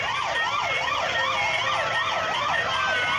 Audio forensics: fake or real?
real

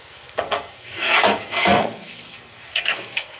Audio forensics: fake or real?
fake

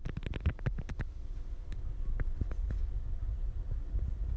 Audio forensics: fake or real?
real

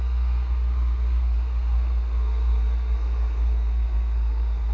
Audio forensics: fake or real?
fake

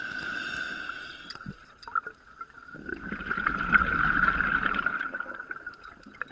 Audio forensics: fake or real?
real